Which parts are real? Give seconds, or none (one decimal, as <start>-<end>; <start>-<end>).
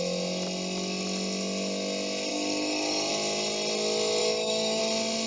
0.0-2.3; 3.1-4.2; 4.8-5.3